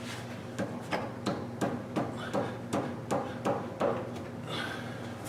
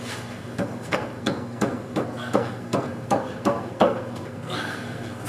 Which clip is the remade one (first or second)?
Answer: second